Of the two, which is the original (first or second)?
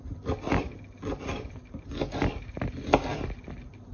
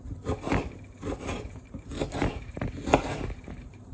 first